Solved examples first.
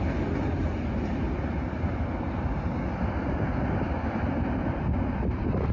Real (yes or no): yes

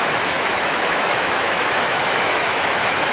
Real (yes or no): no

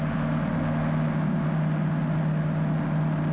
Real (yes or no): yes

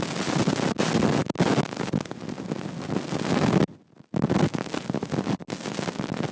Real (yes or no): yes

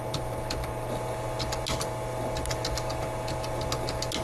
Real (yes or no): yes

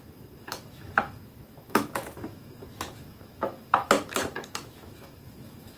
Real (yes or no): no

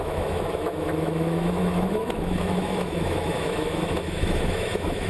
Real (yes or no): no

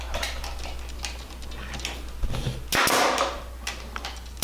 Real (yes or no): yes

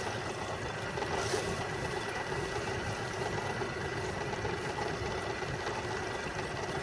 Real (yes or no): yes